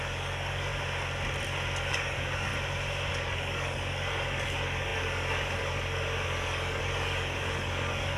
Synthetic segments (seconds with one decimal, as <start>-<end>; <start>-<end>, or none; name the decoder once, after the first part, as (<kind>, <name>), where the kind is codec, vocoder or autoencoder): 0.0-0.7 (codec, DAC); 1.8-2.5; 3.1-8.2